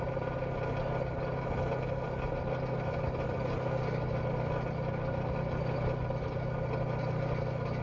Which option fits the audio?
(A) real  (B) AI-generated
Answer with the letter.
A